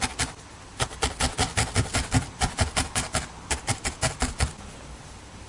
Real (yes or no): yes